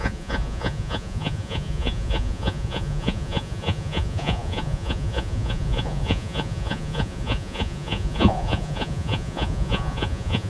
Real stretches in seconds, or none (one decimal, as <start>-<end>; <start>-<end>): none